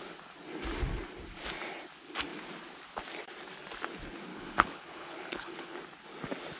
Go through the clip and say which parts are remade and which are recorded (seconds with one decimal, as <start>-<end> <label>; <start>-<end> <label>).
0.0-4.3 recorded; 4.3-5.8 remade; 5.8-6.6 recorded